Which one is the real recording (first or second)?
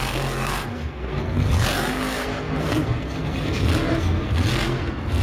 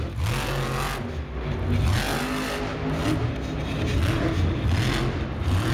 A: second